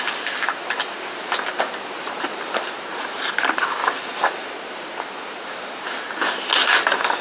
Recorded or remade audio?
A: recorded